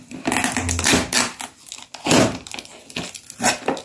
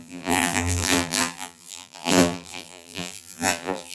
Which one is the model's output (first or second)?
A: second